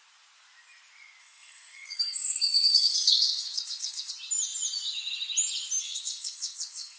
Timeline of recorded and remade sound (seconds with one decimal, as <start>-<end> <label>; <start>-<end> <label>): 0.0-1.2 recorded; 1.2-4.1 remade; 4.1-5.8 recorded; 5.8-7.0 remade